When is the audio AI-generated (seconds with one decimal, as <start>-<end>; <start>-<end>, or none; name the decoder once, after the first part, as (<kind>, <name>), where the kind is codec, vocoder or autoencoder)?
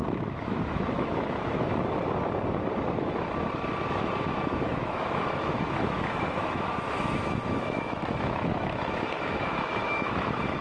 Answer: 0.0-1.7 (autoencoder, DAC-VAE); 3.9-10.6